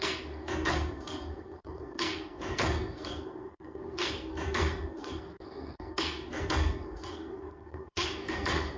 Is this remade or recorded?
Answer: remade